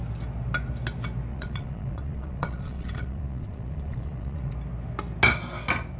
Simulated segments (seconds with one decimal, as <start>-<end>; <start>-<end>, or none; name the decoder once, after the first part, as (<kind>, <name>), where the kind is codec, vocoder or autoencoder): 1.3-4.5 (vocoder, Vocos)